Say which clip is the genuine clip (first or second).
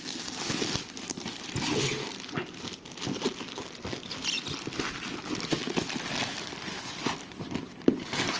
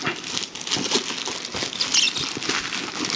second